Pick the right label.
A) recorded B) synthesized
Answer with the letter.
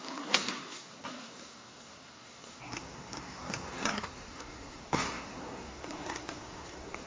B